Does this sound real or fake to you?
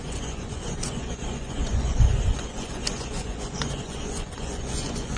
fake